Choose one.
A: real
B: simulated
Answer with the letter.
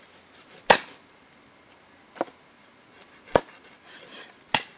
A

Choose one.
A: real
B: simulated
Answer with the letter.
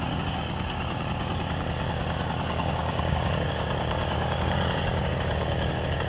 B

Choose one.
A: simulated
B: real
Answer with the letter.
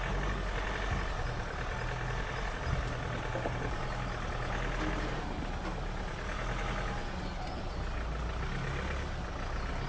B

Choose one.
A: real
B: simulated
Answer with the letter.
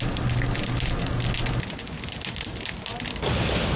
A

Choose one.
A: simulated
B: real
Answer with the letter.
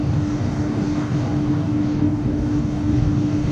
A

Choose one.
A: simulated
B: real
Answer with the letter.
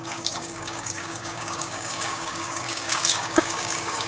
A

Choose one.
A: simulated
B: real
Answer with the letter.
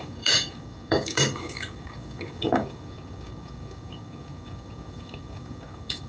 A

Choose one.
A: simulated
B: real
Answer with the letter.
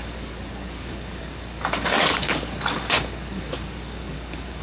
A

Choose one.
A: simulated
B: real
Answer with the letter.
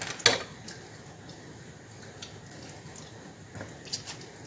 B